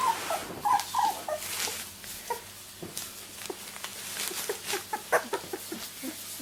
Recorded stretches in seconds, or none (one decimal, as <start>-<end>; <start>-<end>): 0.0-6.4